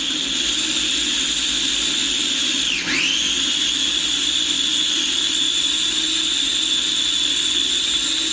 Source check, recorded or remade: recorded